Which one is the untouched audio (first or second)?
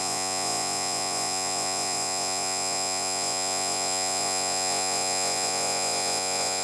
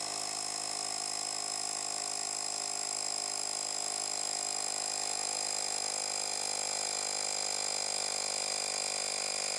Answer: second